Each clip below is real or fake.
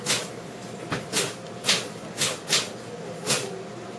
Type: real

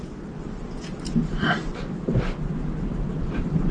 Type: real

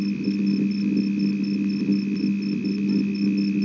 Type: real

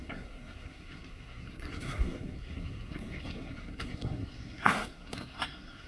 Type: fake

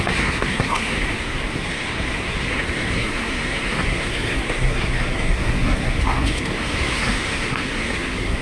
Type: fake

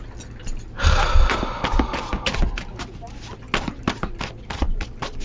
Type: real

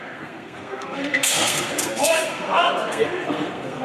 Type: fake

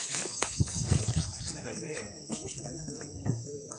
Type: fake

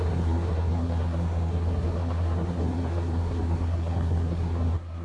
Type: fake